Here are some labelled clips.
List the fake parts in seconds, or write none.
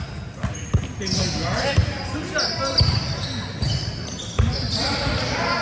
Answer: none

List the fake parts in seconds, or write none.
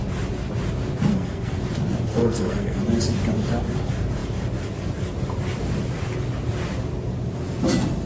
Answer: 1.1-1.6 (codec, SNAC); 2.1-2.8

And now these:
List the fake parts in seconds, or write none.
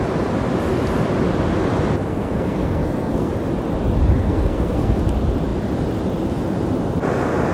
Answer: 2.1-3.3 (codec, SNAC); 4.2-5.0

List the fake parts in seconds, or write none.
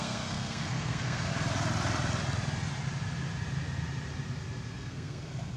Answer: 0.0-1.3 (codec, SNAC); 4.7-5.6